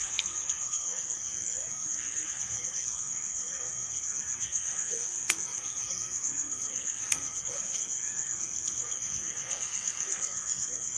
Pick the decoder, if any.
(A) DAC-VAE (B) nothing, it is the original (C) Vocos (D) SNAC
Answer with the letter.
D